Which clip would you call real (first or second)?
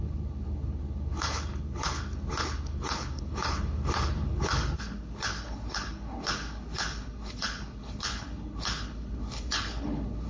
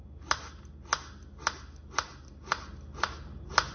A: second